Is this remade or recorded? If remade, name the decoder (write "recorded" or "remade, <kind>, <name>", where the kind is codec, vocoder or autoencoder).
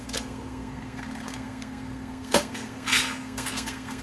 remade, codec, SNAC